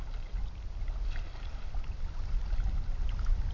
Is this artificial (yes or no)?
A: no